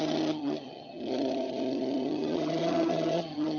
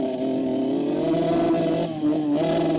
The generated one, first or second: first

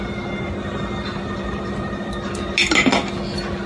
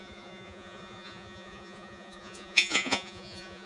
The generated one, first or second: second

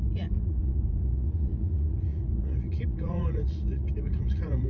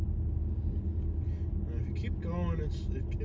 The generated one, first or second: first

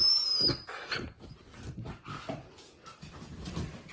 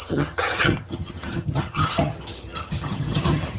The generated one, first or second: second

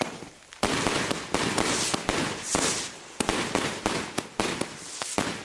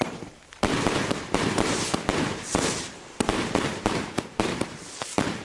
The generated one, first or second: second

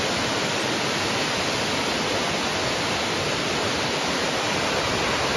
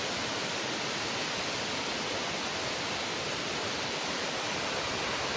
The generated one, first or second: second